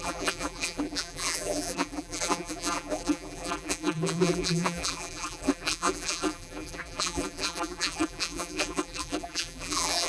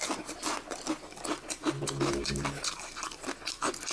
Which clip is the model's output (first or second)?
first